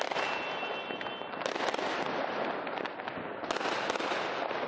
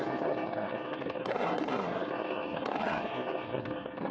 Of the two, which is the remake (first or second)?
second